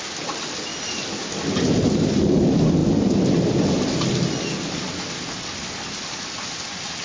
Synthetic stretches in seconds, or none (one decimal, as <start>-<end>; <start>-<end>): none